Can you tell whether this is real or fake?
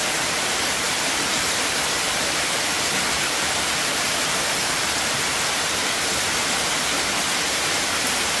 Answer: fake